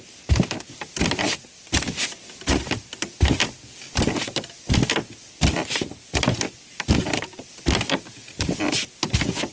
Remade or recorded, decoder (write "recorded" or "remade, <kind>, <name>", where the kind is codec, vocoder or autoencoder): recorded